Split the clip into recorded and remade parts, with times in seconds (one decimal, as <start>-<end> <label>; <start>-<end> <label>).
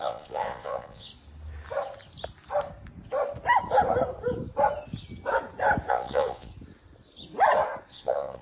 0.0-1.1 remade; 1.1-5.9 recorded; 5.9-6.5 remade; 6.5-7.9 recorded; 7.9-8.4 remade